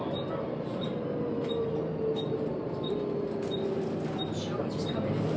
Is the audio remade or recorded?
recorded